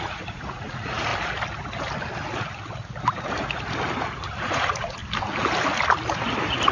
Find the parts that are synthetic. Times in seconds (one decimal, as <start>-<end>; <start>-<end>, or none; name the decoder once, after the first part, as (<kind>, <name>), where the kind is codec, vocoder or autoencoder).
0.0-1.1 (vocoder, Vocos); 4.4-5.0